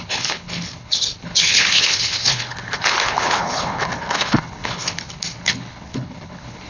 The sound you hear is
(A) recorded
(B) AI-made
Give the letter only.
B